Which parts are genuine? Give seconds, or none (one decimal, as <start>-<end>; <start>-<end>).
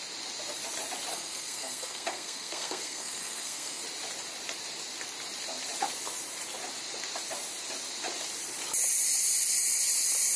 0.0-1.1; 3.8-10.4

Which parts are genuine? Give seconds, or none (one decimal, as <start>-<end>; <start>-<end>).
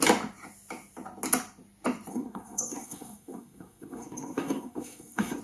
0.0-2.1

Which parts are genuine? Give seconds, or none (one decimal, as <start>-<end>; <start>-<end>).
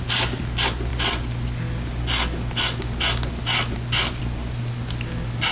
0.0-5.5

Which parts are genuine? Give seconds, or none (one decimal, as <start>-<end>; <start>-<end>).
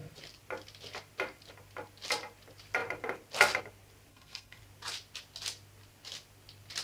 0.0-4.1; 4.6-6.8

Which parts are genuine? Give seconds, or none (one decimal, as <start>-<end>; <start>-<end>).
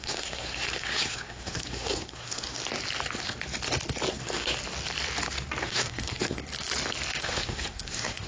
2.6-4.1; 4.5-5.6; 6.4-7.2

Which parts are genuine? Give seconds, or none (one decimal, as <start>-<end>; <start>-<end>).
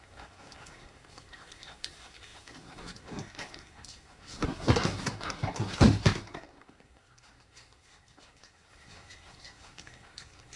none